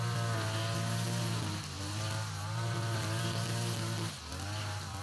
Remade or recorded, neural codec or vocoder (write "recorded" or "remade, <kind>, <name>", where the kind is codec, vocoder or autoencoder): recorded